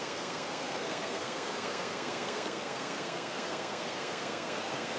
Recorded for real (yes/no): no